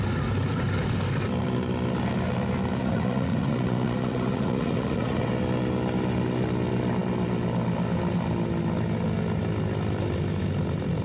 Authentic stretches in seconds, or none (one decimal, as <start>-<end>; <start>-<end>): 0.0-2.8; 5.3-11.0

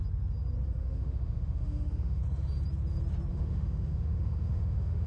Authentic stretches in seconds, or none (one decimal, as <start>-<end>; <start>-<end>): 0.0-0.8; 2.2-3.3